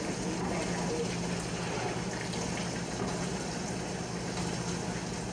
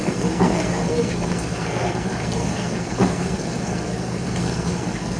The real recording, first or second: first